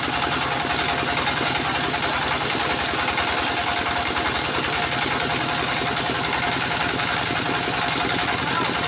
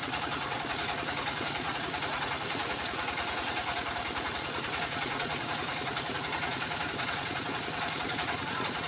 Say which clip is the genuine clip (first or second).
first